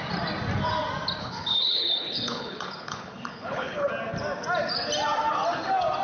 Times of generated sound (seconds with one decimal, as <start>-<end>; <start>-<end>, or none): 1.2-3.9